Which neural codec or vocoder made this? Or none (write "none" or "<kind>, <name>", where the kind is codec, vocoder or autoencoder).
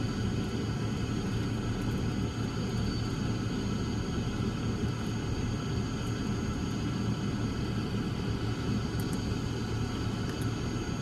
none